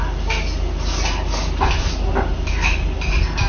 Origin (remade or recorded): recorded